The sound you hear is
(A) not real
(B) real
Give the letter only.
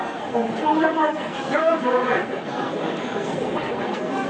A